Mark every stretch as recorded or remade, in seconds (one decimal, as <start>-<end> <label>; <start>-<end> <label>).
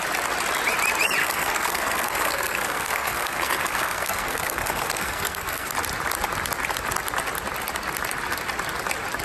0.0-1.2 recorded; 1.2-5.7 remade; 5.7-9.2 recorded